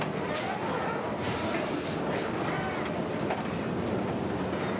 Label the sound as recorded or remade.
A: recorded